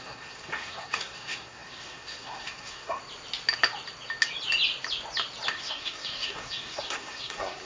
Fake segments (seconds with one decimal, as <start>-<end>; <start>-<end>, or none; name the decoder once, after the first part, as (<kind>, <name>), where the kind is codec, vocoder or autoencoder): 0.0-3.0 (codec, SNAC); 5.5-7.7

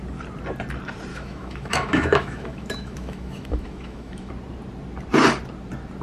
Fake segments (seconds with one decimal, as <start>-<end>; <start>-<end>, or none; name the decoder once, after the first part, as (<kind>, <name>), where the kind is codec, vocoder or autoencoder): 1.1-4.3 (autoencoder, DAC-VAE)

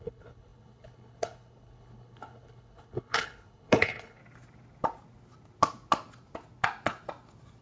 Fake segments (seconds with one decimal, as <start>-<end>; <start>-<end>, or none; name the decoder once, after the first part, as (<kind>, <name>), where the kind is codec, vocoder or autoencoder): 0.0-4.2 (codec, HILCodec)

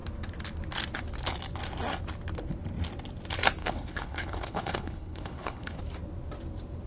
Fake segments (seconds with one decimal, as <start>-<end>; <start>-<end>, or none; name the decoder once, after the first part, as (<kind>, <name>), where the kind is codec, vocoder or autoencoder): 3.6-5.8 (codec, HILCodec)

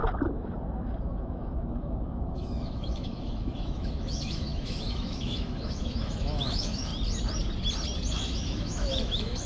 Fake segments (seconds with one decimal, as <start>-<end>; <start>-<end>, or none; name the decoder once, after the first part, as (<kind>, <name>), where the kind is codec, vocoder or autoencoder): 1.0-6.9 (autoencoder, DAC-VAE); 8.1-9.5

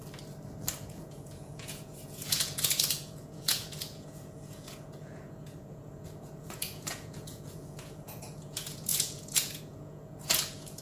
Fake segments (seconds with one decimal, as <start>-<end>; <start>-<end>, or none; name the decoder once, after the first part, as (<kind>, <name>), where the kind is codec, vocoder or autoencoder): 0.7-10.8 (vocoder, Vocos)